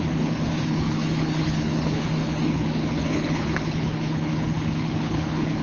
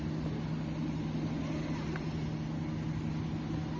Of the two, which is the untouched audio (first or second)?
second